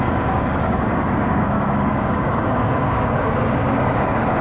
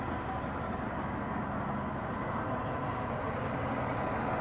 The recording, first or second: second